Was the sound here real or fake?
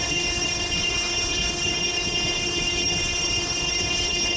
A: fake